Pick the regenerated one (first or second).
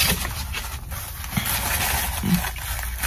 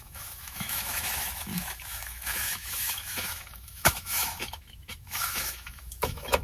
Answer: second